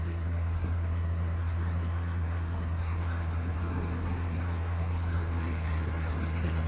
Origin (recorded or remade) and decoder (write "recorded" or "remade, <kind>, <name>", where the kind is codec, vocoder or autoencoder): remade, codec, SNAC